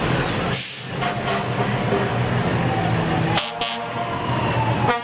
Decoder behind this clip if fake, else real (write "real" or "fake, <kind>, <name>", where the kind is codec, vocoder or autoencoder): real